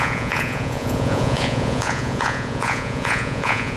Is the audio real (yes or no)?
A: no